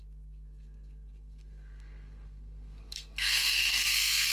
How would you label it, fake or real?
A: fake